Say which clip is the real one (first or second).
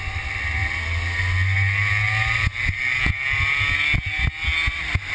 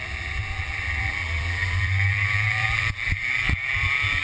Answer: first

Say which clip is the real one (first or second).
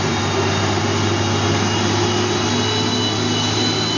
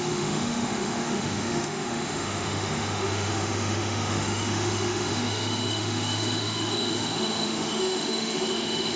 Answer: first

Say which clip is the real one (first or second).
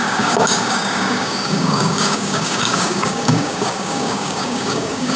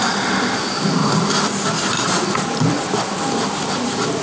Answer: second